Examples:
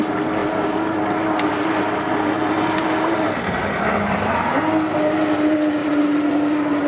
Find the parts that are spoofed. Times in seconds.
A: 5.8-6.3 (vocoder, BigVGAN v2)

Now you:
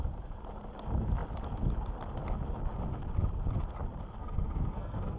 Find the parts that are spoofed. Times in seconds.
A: 4.2-5.2 (codec, SNAC)

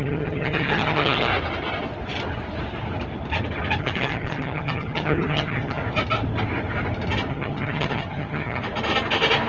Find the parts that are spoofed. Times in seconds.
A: 0.0-1.3 (vocoder, HiFi-GAN); 3.8-5.8; 7.3-8.6

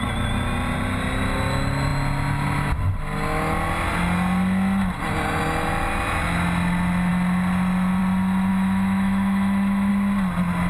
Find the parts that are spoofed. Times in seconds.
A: 8.5-9.9 (autoencoder, DAC-VAE)

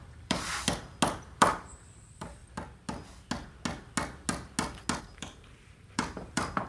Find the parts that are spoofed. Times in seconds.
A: 0.0-0.5 (vocoder, BigVGAN v2); 1.2-2.4; 5.0-6.7